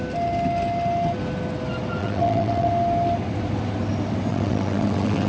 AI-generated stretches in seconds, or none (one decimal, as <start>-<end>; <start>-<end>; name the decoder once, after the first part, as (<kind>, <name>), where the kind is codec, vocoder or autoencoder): 2.0-2.7 (vocoder, WaveNeXt); 4.3-5.3